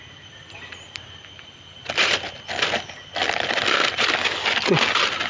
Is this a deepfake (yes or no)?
no